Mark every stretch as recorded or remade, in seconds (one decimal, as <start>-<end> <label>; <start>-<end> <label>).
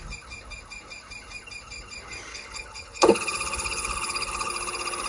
0.0-2.3 recorded; 2.3-4.5 remade; 4.5-5.1 recorded